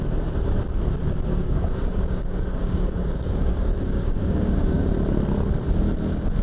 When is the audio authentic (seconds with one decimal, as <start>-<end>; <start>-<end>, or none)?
0.0-1.0; 4.8-6.4